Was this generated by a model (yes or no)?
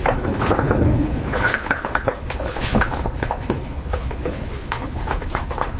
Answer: yes